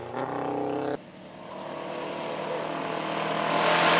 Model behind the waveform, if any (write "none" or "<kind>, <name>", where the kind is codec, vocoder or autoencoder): none